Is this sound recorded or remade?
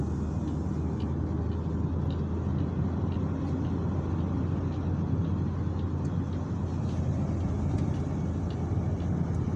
recorded